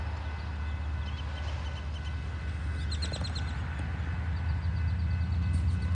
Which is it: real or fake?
real